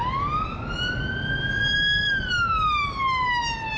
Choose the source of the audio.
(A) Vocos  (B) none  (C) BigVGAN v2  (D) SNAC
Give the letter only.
B